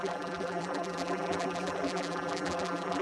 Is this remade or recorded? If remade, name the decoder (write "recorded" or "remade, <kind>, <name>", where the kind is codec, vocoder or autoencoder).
remade, vocoder, BigVGAN v2